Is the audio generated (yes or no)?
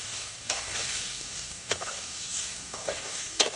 yes